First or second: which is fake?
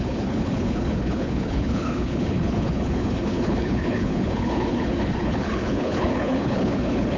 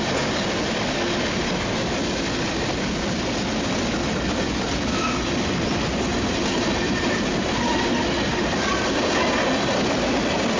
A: first